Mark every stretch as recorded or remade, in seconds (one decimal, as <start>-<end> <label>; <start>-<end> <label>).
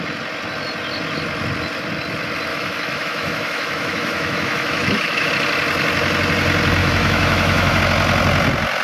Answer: 0.0-2.5 recorded; 2.5-5.3 remade; 5.3-6.8 recorded; 6.8-7.8 remade; 7.8-8.8 recorded